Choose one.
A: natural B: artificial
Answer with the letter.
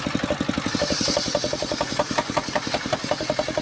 A